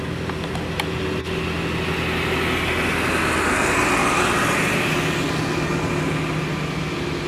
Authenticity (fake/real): real